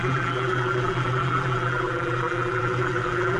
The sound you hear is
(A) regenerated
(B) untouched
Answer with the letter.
A